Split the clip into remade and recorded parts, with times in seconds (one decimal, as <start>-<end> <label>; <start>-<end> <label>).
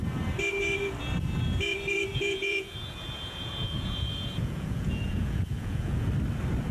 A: 0.0-2.1 recorded; 2.1-6.1 remade; 6.1-6.7 recorded